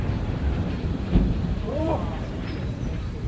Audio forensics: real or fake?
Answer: fake